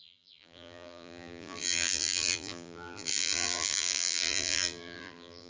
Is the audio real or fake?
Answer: fake